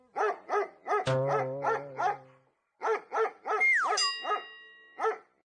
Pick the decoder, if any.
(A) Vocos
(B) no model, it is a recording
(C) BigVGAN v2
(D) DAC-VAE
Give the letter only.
B